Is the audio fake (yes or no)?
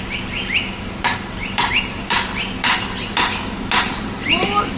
no